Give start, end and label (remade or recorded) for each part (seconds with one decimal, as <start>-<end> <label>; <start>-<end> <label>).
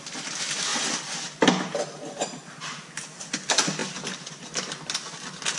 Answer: 0.0-5.6 recorded